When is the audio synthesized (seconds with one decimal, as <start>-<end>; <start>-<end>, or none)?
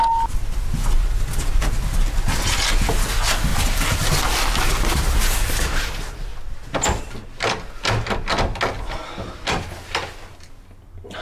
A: 3.5-4.7